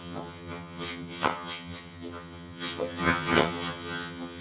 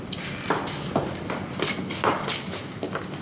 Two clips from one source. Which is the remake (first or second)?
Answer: first